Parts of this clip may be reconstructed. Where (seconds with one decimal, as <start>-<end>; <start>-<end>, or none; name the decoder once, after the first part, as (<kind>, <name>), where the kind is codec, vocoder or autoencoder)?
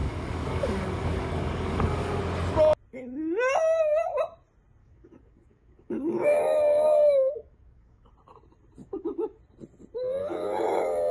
0.0-2.2 (codec, DAC); 4.8-8.1; 8.8-9.4; 10.2-11.1